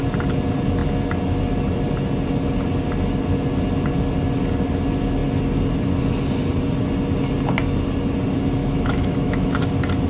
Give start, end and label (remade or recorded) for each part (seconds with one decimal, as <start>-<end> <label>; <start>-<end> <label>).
0.0-8.6 recorded; 8.6-9.5 remade; 9.5-10.1 recorded